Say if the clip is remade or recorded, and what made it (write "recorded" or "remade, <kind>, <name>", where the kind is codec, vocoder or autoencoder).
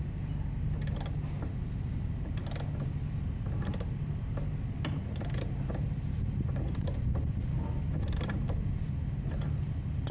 recorded